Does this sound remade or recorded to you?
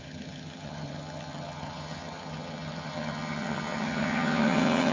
remade